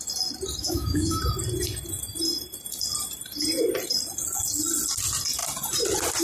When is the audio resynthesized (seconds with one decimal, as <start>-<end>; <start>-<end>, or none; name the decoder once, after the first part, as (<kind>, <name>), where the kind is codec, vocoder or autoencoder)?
0.6-1.2 (autoencoder, DAC-VAE)